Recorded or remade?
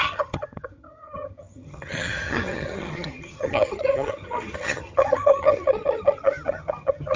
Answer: remade